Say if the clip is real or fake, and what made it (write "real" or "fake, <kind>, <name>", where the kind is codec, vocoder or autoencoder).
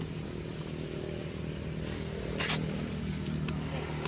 real